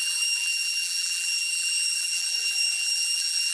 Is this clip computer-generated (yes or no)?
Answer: yes